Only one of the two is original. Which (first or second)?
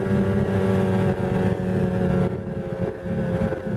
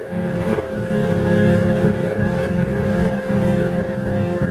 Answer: first